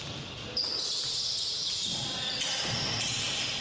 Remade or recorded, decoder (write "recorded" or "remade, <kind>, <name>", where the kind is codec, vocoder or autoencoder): recorded